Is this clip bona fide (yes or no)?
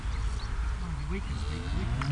yes